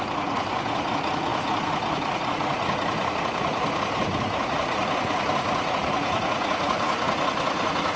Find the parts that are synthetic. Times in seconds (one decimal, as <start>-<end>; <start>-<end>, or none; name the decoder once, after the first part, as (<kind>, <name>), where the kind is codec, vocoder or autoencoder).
0.0-8.0 (vocoder, Vocos)